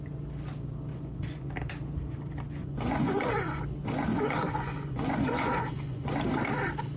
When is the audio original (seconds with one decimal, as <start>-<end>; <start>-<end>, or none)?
0.0-0.9; 1.5-2.6; 3.6-4.1; 6.1-7.0